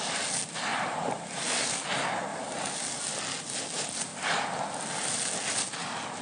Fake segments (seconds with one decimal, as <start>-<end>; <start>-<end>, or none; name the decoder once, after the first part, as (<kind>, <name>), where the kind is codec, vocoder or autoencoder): 0.7-1.4 (vocoder, BigVGAN v2); 2.3-3.2